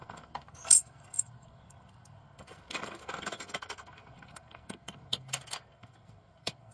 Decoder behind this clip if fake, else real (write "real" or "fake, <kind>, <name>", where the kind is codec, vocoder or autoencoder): fake, codec, SNAC